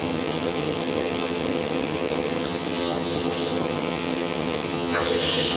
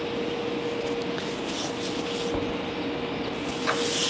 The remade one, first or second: first